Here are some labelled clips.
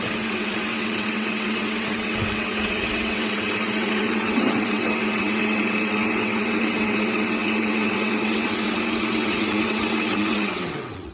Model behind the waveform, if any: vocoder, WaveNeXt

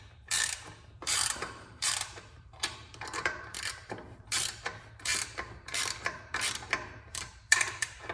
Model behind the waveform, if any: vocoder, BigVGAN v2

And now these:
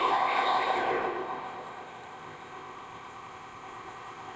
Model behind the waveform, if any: codec, ZipCodec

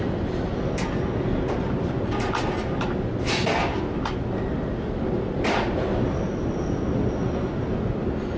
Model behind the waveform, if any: none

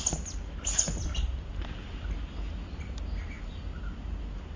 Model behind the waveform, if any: none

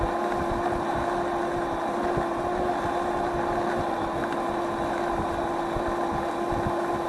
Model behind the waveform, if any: none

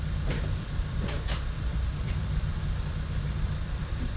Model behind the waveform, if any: vocoder, BigVGAN v2